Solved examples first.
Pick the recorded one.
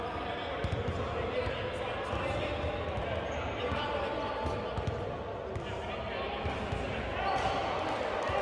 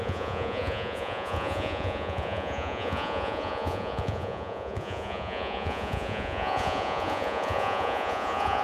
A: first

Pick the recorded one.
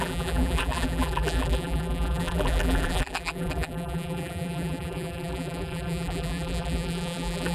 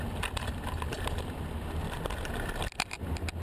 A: second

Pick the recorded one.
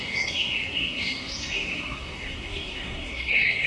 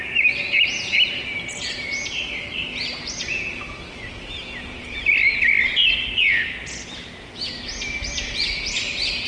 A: second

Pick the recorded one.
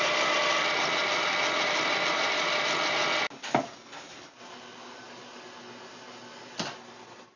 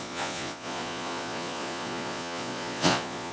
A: first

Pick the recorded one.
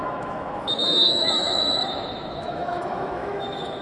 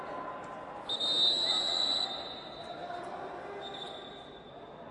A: second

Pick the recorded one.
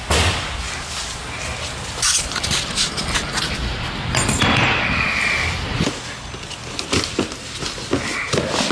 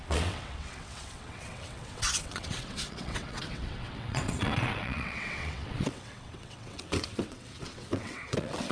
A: first